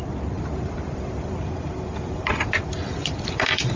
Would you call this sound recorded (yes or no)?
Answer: yes